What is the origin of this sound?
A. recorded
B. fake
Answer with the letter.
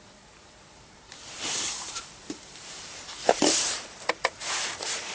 B